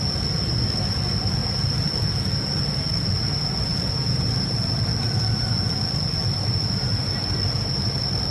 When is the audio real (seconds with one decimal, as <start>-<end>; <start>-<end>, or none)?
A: 0.0-8.3